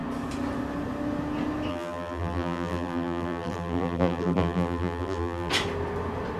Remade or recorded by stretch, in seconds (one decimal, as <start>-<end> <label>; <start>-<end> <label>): 0.0-1.7 recorded; 1.7-5.5 remade; 5.5-6.4 recorded